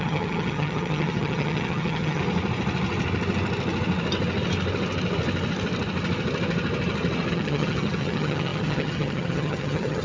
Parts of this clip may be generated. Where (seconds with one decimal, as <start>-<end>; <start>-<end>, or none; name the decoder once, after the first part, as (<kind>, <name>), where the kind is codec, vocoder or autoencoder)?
0.0-2.2 (vocoder, HiFi-GAN); 7.3-10.0